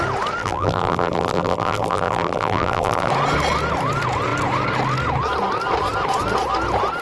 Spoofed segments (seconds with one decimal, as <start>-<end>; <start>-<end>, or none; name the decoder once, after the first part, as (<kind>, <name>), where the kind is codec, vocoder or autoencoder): 0.4-3.1 (vocoder, BigVGAN v2)